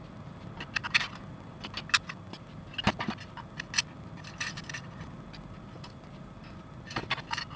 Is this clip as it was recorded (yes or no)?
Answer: yes